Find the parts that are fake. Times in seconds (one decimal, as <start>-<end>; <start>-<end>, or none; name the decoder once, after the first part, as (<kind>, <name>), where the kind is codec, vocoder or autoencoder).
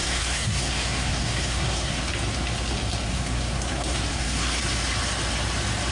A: 0.0-2.1 (codec, SNAC); 3.1-4.6